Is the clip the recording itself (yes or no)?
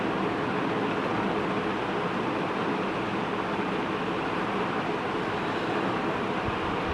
yes